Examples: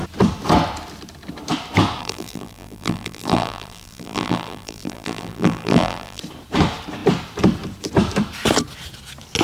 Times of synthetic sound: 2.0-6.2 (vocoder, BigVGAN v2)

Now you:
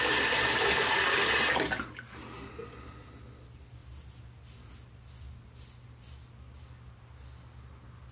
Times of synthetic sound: none

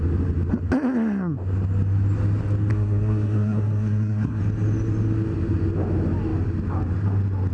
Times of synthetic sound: 2.7-4.4 (codec, SNAC)

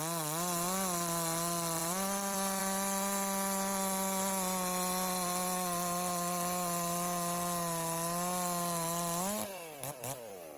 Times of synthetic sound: 1.8-2.6 (vocoder, BigVGAN v2); 9.5-10.6

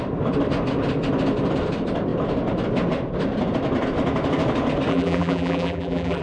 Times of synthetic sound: 4.9-6.2 (vocoder, BigVGAN v2)

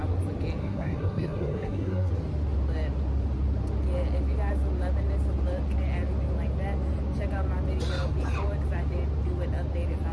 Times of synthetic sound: 0.6-2.1 (codec, SNAC)

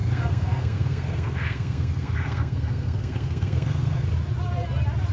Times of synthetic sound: 0.0-4.1 (codec, SNAC)

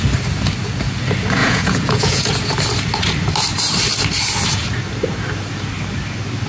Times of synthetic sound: 1.4-2.3 (vocoder, Vocos)